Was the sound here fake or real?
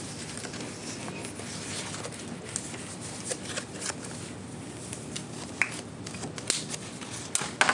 real